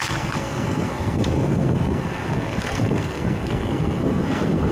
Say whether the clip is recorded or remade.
remade